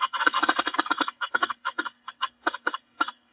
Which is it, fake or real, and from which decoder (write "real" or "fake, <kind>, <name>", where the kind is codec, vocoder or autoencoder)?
fake, codec, SNAC